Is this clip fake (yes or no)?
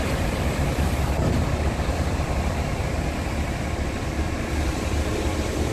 yes